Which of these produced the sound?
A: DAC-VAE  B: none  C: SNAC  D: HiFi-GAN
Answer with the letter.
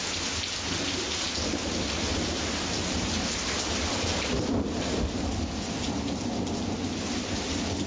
B